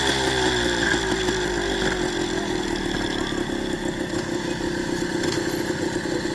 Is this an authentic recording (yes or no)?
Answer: yes